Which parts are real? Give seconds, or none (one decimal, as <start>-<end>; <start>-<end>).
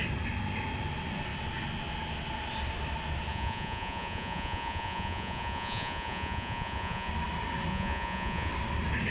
0.0-3.3; 7.1-7.7; 8.5-9.1